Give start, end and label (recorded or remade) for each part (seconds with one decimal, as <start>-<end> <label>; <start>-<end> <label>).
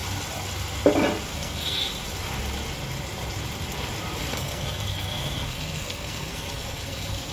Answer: 0.0-1.3 recorded; 1.3-1.9 remade; 1.9-4.2 recorded; 4.2-7.3 remade